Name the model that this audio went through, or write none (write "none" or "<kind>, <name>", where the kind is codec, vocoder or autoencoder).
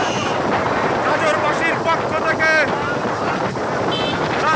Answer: none